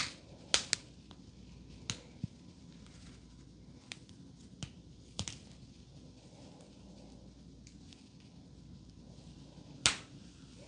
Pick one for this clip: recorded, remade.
recorded